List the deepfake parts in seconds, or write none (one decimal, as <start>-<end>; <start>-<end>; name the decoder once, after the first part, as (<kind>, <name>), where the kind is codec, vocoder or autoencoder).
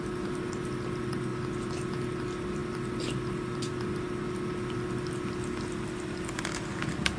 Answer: none